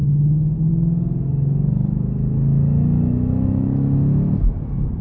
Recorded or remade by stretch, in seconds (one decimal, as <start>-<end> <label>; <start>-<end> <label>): 0.0-5.0 recorded